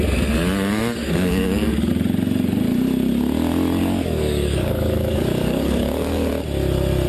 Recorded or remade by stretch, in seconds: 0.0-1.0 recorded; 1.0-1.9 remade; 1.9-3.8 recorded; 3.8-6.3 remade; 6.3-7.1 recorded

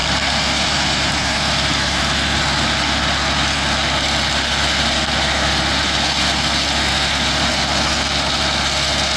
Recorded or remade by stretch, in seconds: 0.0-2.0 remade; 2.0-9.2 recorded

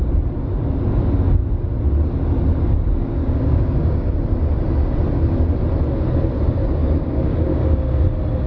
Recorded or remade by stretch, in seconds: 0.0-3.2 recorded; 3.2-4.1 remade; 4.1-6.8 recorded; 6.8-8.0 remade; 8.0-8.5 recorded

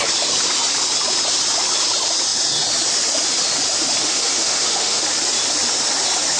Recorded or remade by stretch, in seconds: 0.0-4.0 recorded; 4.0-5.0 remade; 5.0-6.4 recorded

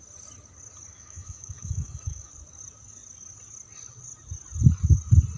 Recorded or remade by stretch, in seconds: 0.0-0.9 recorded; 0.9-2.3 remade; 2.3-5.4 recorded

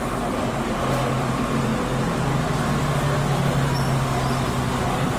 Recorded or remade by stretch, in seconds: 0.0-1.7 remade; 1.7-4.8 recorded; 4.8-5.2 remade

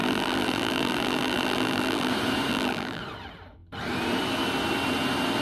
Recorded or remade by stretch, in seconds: 0.0-2.1 remade; 2.1-2.5 recorded; 2.5-3.0 remade; 3.0-5.4 recorded

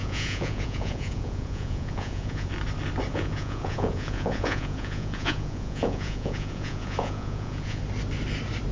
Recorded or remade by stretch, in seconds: 0.0-2.5 remade; 2.5-3.1 recorded; 3.1-7.8 remade; 7.8-8.7 recorded